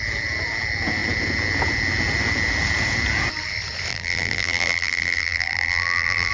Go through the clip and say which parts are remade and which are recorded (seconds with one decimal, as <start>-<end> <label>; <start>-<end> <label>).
0.0-3.9 recorded; 3.9-6.3 remade